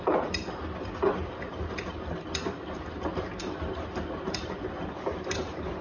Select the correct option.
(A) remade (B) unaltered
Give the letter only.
B